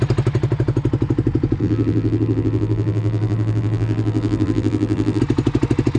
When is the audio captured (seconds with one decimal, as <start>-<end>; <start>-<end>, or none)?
0.0-1.6; 5.2-6.0